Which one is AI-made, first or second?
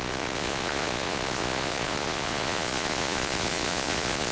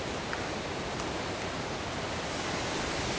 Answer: first